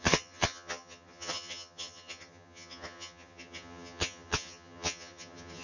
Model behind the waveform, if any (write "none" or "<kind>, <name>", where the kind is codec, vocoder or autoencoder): vocoder, HiFi-GAN